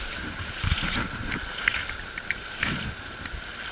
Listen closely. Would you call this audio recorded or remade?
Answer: remade